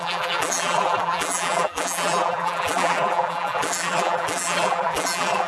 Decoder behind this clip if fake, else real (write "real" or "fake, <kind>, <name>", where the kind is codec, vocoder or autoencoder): fake, vocoder, BigVGAN v2